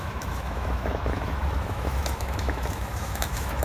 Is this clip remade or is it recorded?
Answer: remade